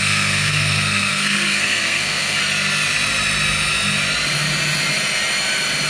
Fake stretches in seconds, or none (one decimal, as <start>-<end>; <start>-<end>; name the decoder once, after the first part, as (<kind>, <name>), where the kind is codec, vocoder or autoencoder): 0.0-2.4 (codec, SNAC)